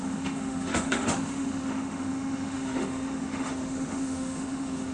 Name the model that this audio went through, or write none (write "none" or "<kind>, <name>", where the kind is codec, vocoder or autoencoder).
autoencoder, DAC-VAE